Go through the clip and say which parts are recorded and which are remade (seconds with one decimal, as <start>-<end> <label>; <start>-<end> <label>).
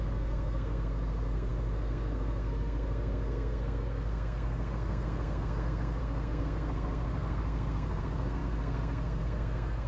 0.0-9.9 remade